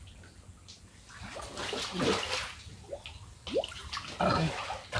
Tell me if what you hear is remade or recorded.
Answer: recorded